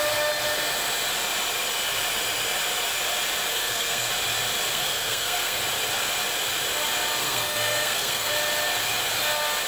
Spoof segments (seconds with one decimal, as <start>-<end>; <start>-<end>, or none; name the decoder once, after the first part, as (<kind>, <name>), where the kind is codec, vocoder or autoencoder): 3.5-4.1 (codec, SNAC); 4.7-5.6; 7.2-8.3